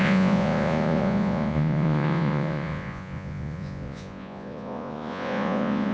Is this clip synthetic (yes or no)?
yes